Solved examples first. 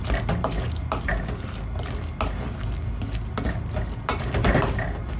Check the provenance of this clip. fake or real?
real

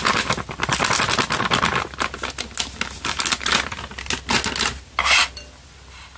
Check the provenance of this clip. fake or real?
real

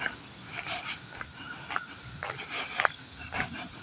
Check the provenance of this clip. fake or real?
real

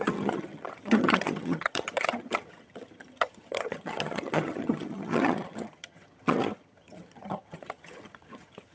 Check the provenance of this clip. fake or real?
fake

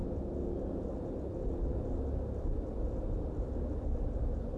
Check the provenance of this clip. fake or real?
real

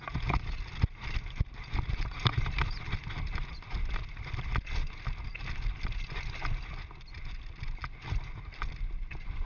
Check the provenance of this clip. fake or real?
real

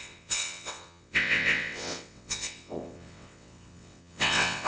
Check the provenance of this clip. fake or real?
fake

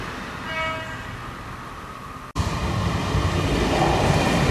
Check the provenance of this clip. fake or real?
real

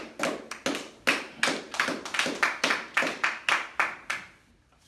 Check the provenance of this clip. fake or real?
real